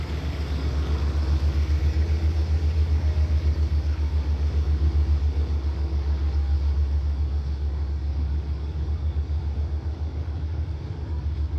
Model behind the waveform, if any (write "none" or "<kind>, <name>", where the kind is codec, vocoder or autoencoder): codec, DAC